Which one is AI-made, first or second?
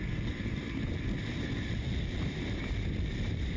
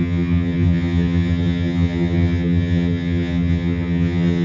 second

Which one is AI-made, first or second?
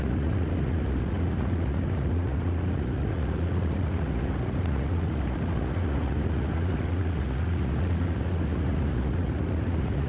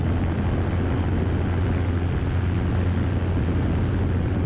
first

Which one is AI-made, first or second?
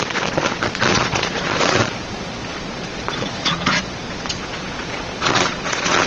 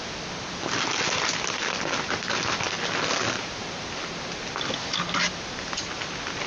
first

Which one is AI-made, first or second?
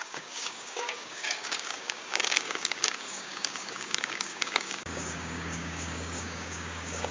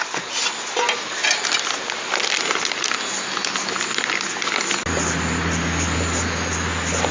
first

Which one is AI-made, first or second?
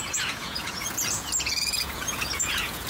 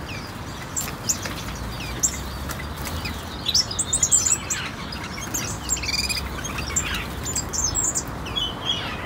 first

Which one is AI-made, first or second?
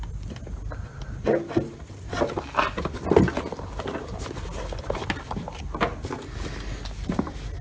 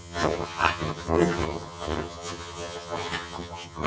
second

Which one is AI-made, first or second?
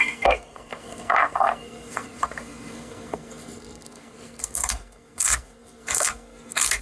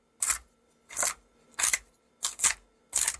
first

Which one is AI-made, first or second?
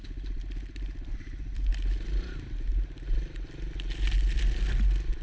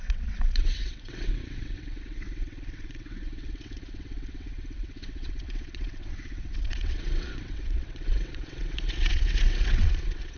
second